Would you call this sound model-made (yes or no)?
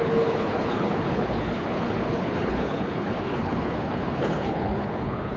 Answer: yes